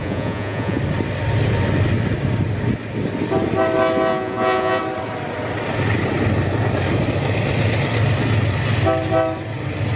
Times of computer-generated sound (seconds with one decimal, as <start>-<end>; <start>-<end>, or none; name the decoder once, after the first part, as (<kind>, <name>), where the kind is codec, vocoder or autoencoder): 0.0-0.8 (vocoder, Vocos); 4.1-4.8